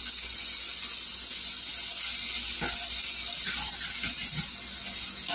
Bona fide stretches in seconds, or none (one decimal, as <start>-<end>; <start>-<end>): 0.0-5.3